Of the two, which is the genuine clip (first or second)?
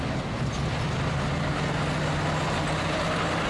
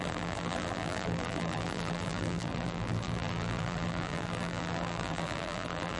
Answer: first